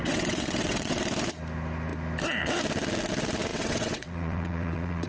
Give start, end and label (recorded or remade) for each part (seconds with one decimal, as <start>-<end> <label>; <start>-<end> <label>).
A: 0.0-1.0 remade; 1.0-3.5 recorded; 3.5-5.1 remade